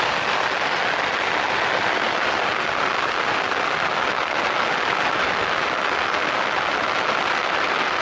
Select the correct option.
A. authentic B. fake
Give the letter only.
A